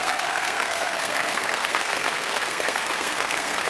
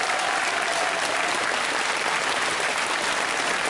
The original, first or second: second